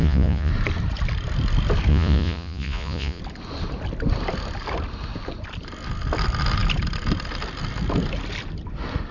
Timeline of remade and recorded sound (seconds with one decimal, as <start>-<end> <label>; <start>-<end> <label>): 0.0-0.5 remade; 0.5-1.9 recorded; 1.9-3.2 remade; 3.2-9.1 recorded